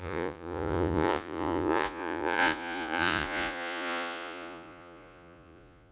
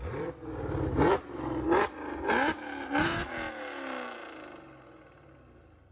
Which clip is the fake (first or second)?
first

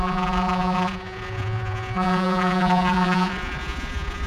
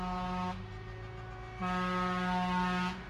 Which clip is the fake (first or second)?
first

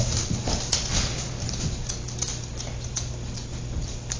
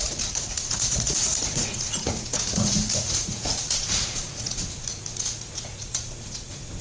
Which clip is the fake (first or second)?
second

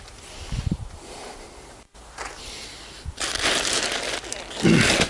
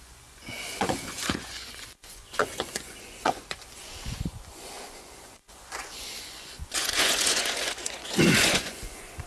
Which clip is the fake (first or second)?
second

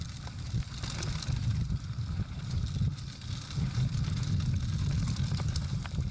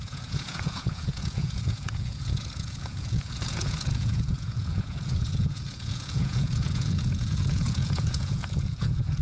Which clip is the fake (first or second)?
second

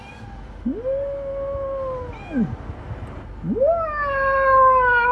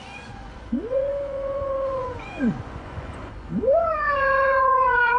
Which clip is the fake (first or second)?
second